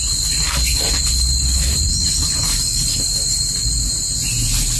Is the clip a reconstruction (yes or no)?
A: no